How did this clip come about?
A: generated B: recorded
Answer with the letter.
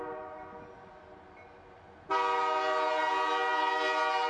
B